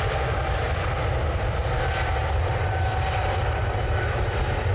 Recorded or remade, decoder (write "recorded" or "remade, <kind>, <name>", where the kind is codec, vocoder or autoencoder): remade, vocoder, BigVGAN v2